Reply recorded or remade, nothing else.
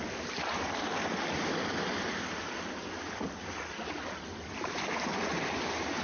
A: recorded